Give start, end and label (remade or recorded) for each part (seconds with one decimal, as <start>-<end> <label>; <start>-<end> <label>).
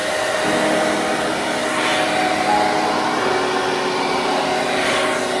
0.0-5.4 recorded